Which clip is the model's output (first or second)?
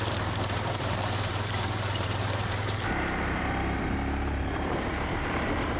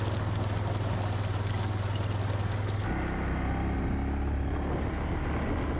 first